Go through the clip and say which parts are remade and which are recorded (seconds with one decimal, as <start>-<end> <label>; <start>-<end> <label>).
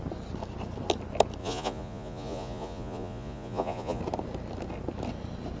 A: 0.0-1.4 recorded; 1.4-4.0 remade; 4.0-5.6 recorded